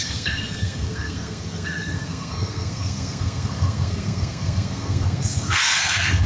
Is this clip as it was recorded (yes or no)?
no